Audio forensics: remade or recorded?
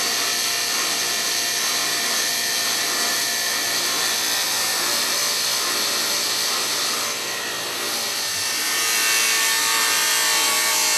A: recorded